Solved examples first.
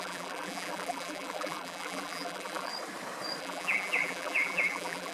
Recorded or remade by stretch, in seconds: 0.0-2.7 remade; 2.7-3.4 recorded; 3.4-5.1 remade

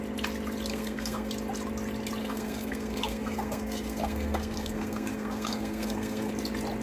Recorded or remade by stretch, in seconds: 0.0-0.7 recorded; 0.7-1.3 remade; 1.3-2.2 recorded; 2.2-6.3 remade; 6.3-6.8 recorded